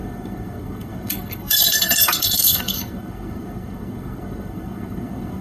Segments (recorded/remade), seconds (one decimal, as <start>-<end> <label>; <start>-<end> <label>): 0.0-5.4 remade